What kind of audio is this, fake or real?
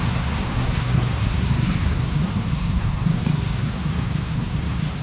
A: fake